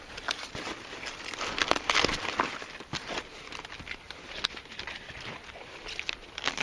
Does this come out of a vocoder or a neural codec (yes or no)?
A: no